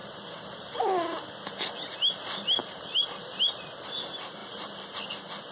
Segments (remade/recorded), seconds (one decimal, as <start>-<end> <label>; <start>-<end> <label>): 0.0-2.6 recorded; 2.6-3.2 remade; 3.2-4.4 recorded; 4.4-5.0 remade; 5.0-5.5 recorded